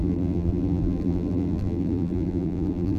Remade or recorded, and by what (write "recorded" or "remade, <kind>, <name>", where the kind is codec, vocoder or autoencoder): remade, vocoder, BigVGAN v2